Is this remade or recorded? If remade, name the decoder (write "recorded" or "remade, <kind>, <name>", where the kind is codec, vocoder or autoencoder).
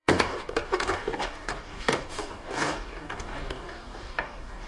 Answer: remade, codec, DAC